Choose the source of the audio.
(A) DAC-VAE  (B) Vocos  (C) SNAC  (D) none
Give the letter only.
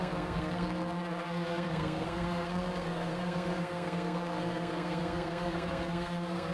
C